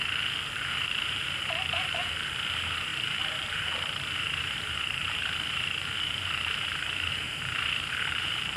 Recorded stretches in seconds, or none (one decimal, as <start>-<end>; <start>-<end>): 0.0-0.5